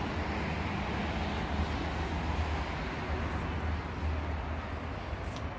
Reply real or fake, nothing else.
real